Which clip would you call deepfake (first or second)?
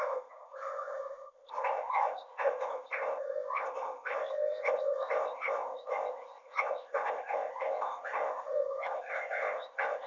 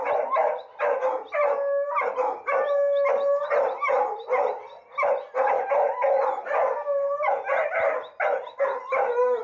first